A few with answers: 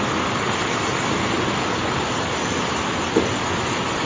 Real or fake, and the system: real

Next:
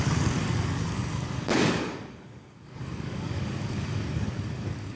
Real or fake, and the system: fake, codec, DAC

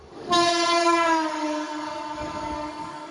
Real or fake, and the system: fake, codec, DAC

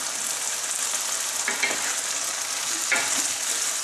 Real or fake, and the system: real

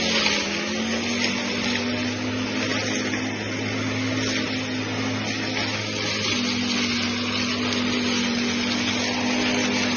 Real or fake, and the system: real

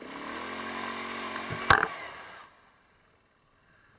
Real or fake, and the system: real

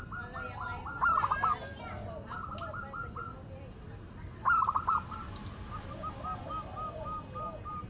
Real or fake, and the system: real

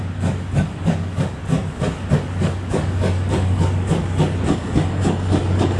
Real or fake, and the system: fake, codec, DAC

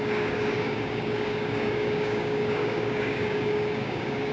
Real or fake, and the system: fake, codec, DAC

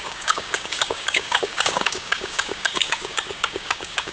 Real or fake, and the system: fake, codec, DAC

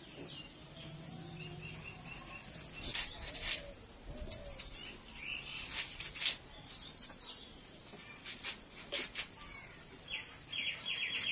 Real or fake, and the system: real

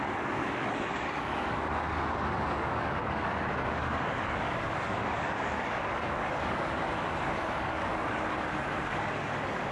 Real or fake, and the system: fake, codec, DAC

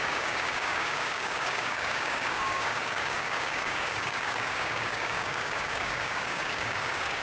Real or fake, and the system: fake, codec, DAC